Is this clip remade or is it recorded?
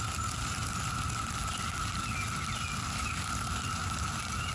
recorded